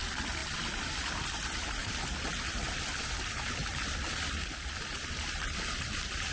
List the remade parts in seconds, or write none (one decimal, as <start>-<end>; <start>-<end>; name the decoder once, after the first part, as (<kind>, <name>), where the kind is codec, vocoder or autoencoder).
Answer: 0.0-1.8 (vocoder, BigVGAN v2); 5.3-6.3